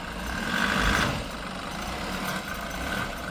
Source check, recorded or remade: recorded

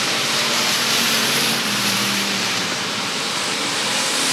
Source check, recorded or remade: remade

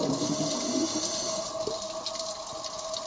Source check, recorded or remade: recorded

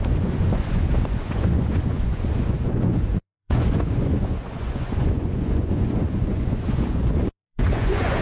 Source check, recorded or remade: remade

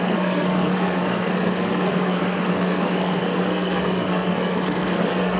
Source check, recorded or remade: remade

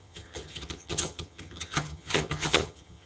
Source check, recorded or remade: remade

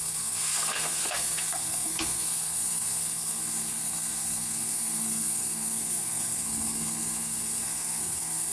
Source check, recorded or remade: remade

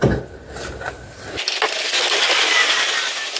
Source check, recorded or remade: recorded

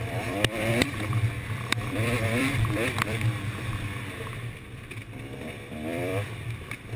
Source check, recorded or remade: remade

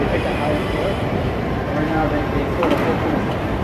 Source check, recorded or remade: remade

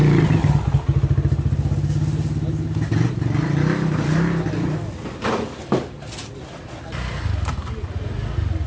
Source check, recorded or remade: recorded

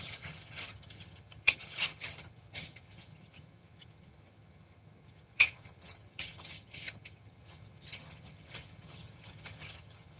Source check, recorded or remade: remade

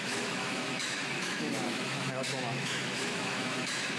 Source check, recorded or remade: remade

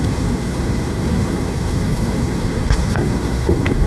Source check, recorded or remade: remade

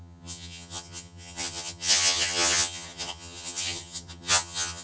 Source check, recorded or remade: remade